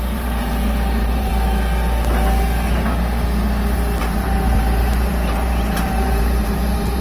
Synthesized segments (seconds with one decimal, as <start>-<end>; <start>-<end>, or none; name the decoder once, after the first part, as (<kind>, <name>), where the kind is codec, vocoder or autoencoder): 0.0-1.3 (vocoder, BigVGAN v2); 4.0-7.0